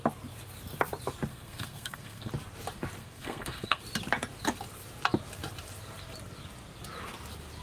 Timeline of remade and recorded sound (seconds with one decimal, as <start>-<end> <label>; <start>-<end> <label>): 0.0-1.3 recorded; 1.3-2.3 remade; 2.3-3.0 recorded; 3.0-3.8 remade; 3.8-7.6 recorded